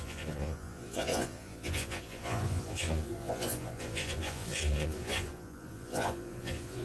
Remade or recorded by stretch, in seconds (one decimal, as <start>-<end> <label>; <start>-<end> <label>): 0.0-6.8 remade